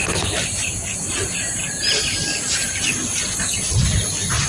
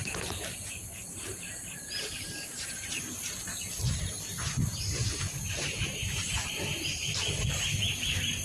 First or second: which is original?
first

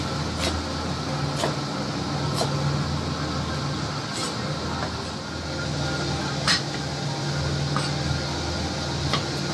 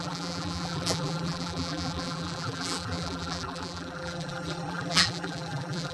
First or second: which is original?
first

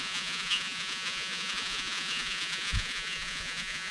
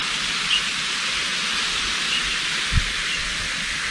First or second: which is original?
second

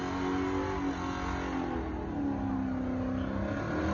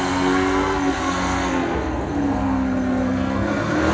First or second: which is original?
first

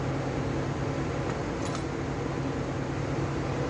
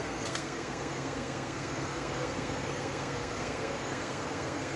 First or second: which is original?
first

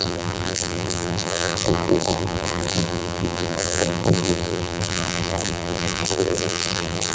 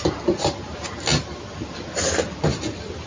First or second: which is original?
second